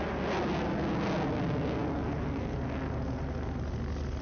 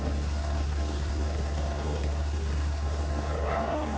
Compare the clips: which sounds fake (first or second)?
second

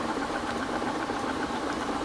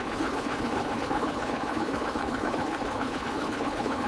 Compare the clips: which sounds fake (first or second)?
second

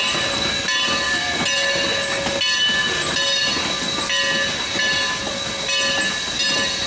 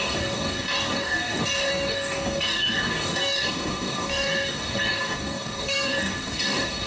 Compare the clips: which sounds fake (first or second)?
second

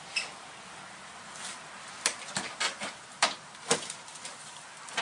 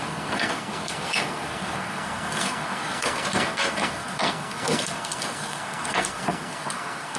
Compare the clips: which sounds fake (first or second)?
second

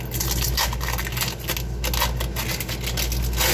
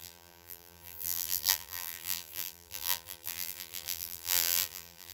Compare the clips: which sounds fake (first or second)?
second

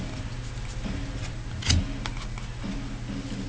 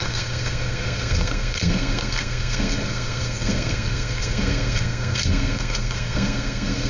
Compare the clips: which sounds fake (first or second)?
second